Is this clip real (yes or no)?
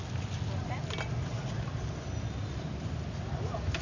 yes